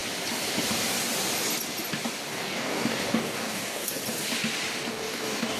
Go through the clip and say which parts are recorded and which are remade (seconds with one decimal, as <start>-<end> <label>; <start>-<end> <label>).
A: 0.0-2.3 recorded; 2.3-4.0 remade; 4.0-4.9 recorded; 4.9-5.6 remade